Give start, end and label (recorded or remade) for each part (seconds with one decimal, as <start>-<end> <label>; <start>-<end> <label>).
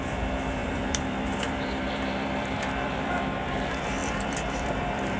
0.0-5.2 remade